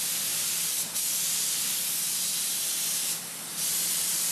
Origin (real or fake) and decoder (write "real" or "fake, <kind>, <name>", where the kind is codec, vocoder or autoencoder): real